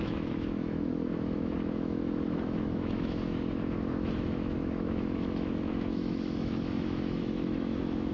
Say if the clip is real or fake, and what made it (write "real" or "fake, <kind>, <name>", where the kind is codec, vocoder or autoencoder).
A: fake, autoencoder, DAC-VAE